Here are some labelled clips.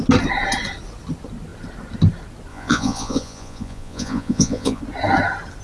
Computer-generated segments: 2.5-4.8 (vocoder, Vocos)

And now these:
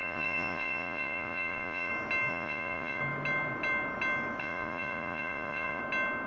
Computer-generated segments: 0.0-1.9 (vocoder, Vocos); 2.3-3.0; 4.4-5.8

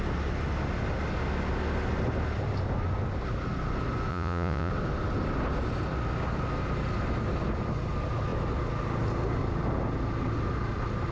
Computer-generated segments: 4.1-4.7 (vocoder, Vocos)

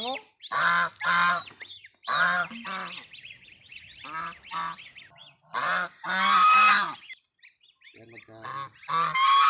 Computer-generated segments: none

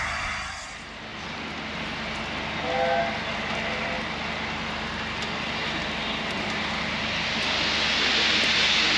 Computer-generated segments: none

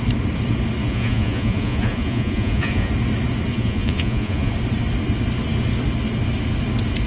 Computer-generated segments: 0.8-2.9 (vocoder, Vocos); 3.5-4.5